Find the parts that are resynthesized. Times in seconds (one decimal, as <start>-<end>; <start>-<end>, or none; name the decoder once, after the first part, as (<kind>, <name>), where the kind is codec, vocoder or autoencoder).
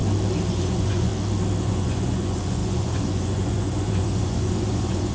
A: 0.5-1.1 (vocoder, Vocos); 1.6-5.1